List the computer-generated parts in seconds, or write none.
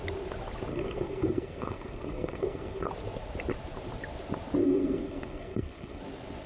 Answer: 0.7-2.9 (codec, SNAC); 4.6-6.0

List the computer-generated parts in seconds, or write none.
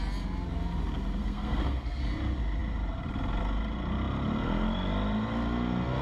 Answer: 1.2-2.0 (codec, SNAC)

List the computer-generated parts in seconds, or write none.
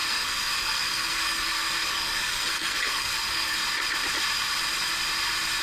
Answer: 0.0-3.6 (codec, SNAC)